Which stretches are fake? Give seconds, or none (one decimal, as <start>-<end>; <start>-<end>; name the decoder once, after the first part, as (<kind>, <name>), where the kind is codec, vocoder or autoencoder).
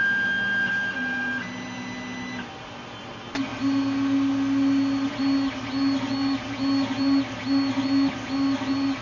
none